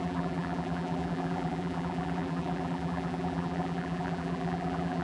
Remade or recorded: remade